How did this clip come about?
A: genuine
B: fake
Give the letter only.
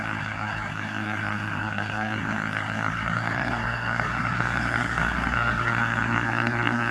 B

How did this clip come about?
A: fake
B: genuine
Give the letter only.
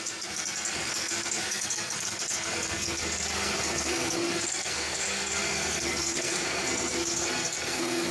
A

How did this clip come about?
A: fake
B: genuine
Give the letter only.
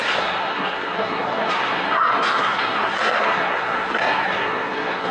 A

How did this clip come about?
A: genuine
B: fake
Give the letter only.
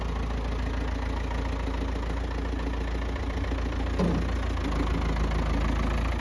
A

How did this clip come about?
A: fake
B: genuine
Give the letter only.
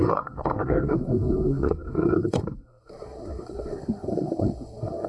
A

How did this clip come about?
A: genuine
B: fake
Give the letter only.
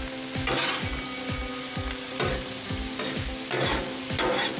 A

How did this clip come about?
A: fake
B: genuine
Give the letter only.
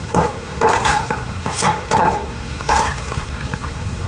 A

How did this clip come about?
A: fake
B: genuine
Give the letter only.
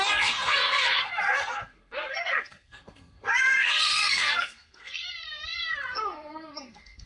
A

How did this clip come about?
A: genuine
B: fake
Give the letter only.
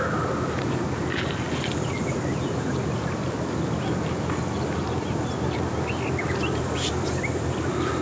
A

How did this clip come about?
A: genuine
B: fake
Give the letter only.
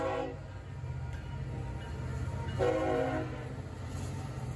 A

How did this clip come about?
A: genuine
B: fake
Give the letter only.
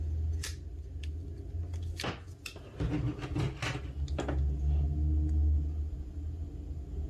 A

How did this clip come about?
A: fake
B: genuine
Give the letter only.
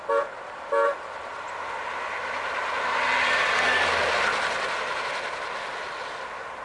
B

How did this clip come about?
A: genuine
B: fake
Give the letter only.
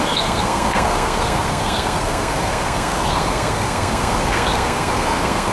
B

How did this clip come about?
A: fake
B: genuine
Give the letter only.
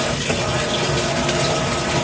B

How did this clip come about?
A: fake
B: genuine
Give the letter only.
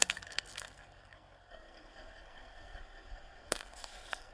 A